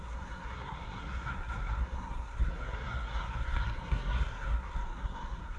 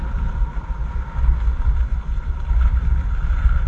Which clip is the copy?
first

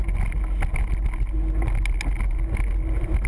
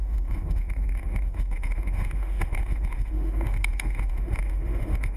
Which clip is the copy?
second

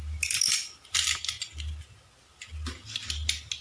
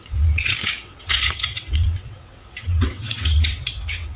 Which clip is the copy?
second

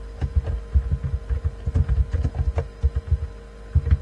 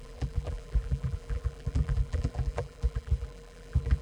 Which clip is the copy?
second